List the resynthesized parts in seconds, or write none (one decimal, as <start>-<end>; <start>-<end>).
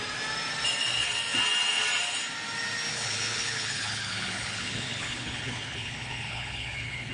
2.9-7.1